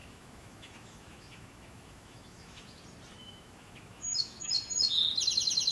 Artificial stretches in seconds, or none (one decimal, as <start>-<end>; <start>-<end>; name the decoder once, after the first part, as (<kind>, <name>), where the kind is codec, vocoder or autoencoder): 0.0-2.8 (autoencoder, DAC-VAE); 3.2-4.5